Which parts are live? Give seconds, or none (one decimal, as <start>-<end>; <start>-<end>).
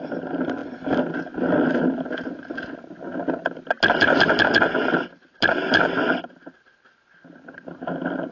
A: 0.0-8.3